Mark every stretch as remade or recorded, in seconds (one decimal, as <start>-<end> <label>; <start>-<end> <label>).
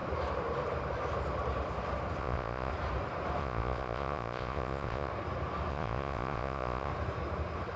0.0-2.2 recorded; 2.2-2.7 remade; 2.7-3.4 recorded; 3.4-5.1 remade; 5.1-5.7 recorded; 5.7-6.9 remade; 6.9-7.8 recorded